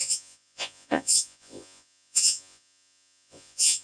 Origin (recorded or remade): remade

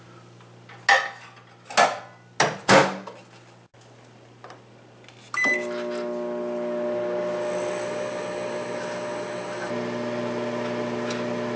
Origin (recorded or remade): recorded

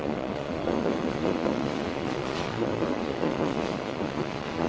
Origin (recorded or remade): remade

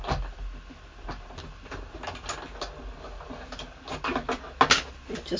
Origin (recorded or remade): recorded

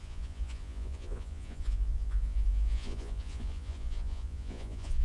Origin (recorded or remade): remade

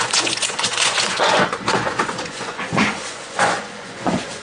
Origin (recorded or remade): remade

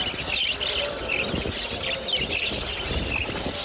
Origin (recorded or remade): recorded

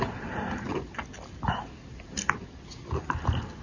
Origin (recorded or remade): recorded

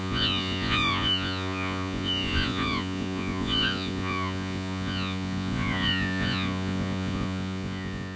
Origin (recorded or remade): remade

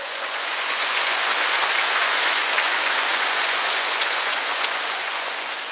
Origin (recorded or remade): remade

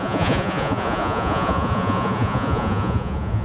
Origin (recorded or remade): remade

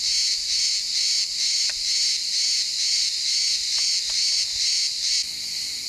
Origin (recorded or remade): recorded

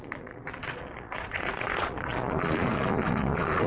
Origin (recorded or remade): remade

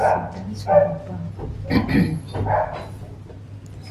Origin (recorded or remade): recorded